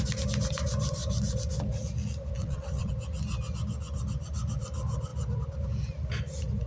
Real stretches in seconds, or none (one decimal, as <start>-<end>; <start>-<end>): 0.0-2.4; 2.9-6.7